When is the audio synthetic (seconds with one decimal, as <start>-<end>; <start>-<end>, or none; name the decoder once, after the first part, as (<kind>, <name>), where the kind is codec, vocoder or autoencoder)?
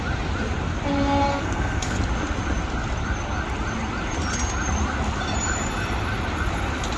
1.3-2.0 (codec, SNAC)